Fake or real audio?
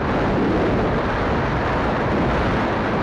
real